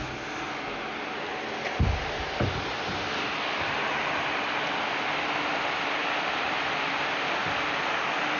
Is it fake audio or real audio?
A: real